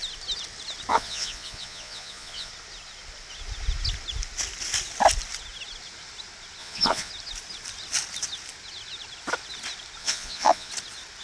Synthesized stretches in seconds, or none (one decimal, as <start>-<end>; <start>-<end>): 0.9-2.5; 6.6-7.1; 10.0-10.7